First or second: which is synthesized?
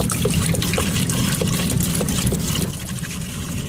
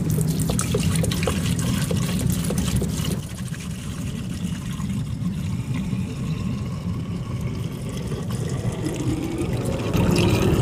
first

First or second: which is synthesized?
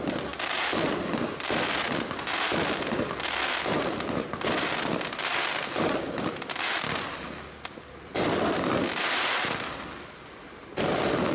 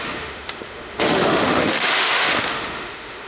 second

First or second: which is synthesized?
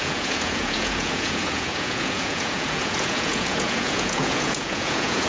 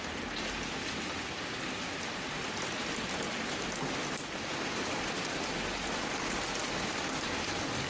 first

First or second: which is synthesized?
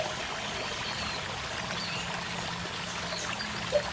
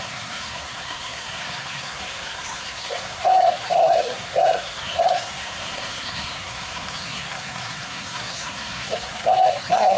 second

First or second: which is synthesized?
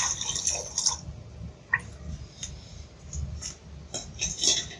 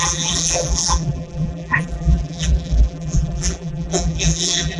second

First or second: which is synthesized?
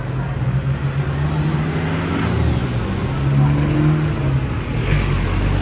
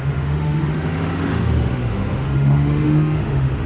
second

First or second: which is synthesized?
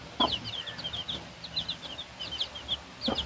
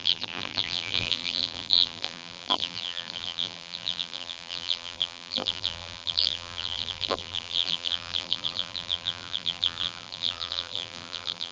second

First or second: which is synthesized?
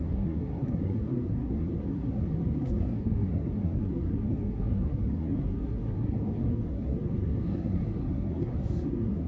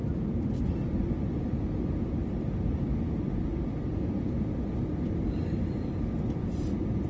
first